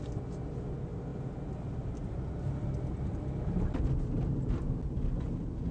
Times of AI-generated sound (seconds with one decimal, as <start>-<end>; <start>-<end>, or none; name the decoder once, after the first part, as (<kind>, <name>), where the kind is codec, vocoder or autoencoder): 1.1-3.8 (vocoder, BigVGAN v2)